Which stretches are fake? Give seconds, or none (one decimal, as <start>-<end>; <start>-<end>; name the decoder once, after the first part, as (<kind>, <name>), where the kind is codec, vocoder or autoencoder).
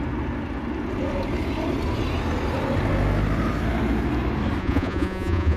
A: 4.6-5.6 (vocoder, Vocos)